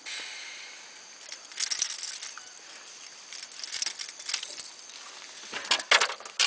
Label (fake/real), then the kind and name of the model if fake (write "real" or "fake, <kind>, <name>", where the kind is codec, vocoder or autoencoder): real